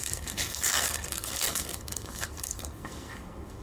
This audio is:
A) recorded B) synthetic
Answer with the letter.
B